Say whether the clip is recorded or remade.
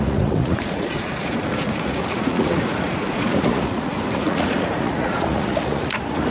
remade